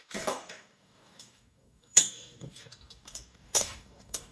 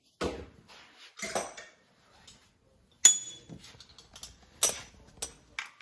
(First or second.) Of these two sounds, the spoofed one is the first